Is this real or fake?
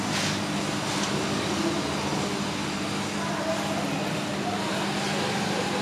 real